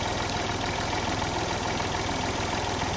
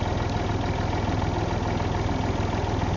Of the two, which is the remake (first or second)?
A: first